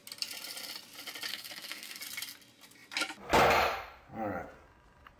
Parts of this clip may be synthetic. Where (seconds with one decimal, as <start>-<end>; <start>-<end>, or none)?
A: 1.3-2.0